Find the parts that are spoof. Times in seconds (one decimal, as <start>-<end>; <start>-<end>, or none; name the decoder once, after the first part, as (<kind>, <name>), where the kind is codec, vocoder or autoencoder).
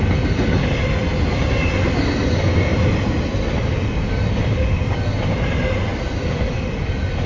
none